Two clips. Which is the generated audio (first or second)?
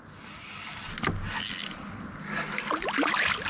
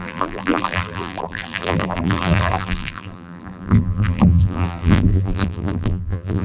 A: second